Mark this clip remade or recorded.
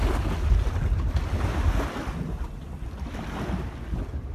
recorded